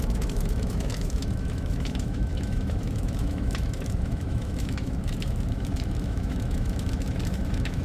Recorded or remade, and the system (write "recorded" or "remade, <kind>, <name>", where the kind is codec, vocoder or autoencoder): remade, autoencoder, DAC-VAE